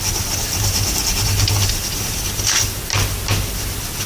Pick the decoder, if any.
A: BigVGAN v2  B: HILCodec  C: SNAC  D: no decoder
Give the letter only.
D